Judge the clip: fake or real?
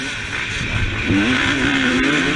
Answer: real